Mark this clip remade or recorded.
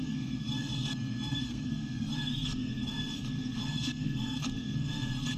remade